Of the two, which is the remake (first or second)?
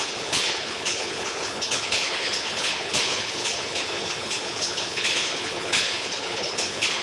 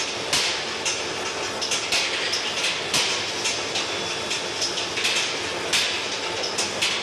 first